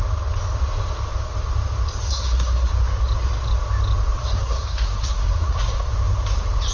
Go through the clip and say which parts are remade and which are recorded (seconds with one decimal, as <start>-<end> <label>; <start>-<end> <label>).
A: 0.0-2.0 recorded; 2.0-2.7 remade; 2.7-4.2 recorded; 4.2-5.9 remade; 5.9-6.7 recorded